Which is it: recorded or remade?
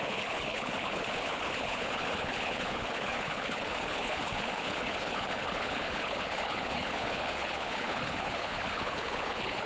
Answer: remade